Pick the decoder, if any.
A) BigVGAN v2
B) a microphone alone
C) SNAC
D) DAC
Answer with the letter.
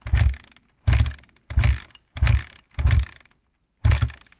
B